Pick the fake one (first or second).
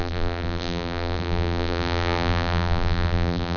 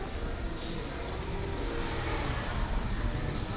first